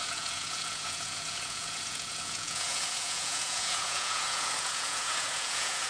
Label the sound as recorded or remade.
remade